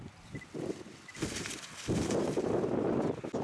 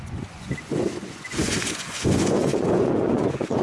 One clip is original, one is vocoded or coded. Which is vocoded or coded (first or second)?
second